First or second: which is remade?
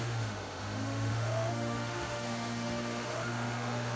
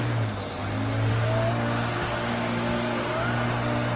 first